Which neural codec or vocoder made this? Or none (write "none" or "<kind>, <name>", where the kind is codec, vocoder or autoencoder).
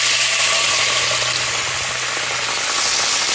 none